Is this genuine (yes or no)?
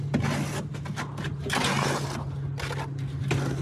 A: yes